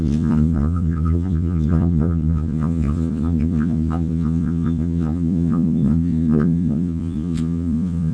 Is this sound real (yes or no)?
no